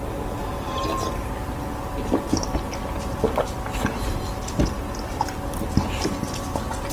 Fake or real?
real